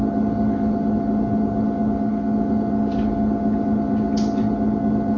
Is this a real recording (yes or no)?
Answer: yes